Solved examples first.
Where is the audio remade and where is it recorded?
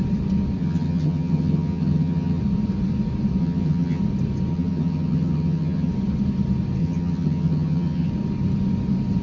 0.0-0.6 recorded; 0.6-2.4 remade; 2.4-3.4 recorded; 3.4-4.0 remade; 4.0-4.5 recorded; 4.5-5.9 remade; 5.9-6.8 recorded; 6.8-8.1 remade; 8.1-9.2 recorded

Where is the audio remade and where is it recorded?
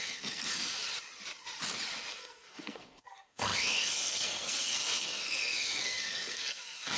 0.0-0.8 remade; 0.8-2.1 recorded; 2.1-7.0 remade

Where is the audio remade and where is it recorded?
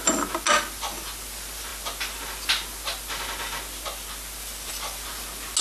0.0-5.6 recorded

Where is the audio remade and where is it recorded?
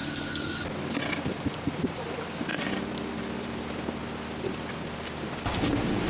0.0-1.3 recorded; 1.3-4.0 remade; 4.0-5.3 recorded; 5.3-6.1 remade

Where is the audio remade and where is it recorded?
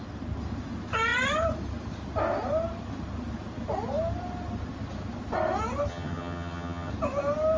0.0-5.9 recorded; 5.9-6.9 remade; 6.9-7.6 recorded